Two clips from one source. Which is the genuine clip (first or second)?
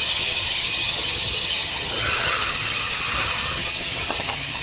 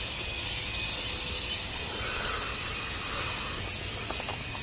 second